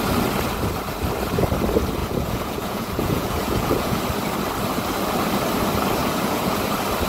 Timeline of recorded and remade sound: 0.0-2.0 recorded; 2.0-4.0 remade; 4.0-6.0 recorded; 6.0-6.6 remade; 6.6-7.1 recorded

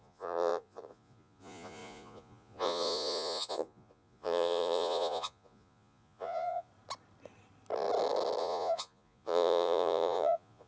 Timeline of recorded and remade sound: 0.0-6.7 remade; 6.7-8.4 recorded; 8.4-10.7 remade

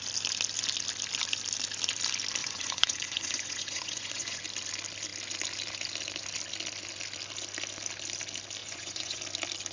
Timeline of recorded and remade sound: 0.0-2.4 recorded; 2.4-4.4 remade; 4.4-8.6 recorded; 8.6-9.2 remade; 9.2-9.7 recorded

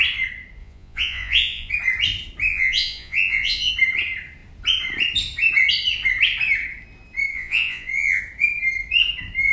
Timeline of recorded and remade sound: 0.0-0.6 recorded; 0.6-1.7 remade; 1.7-2.5 recorded; 2.5-3.7 remade; 3.7-7.3 recorded; 7.3-8.2 remade; 8.2-9.5 recorded

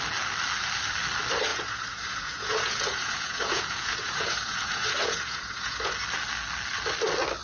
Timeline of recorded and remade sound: 0.0-1.5 recorded; 1.5-5.9 remade; 5.9-7.4 recorded

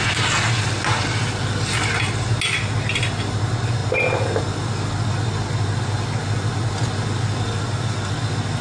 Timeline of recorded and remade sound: 0.0-8.6 recorded

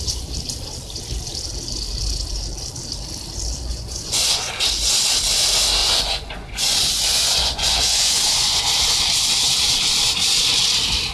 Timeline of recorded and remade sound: 0.0-3.7 recorded; 3.7-4.5 remade; 4.5-5.8 recorded; 5.8-8.6 remade; 8.6-11.1 recorded